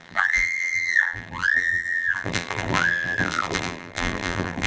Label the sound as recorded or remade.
remade